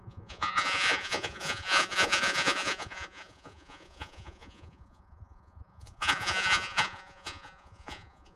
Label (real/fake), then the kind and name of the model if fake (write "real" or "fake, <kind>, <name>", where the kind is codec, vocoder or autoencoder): fake, vocoder, Vocos